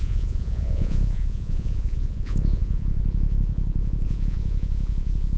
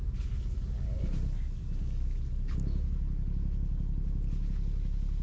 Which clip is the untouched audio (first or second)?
second